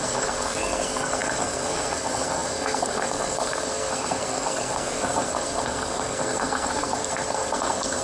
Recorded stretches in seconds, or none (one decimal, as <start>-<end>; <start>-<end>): none